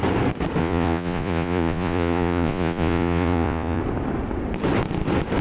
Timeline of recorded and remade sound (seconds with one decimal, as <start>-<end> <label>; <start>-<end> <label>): 0.0-0.6 recorded; 0.6-3.8 remade; 3.8-5.4 recorded